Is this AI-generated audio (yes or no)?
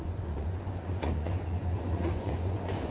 yes